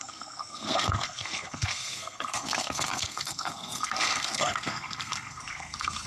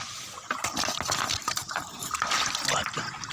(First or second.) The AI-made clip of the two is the first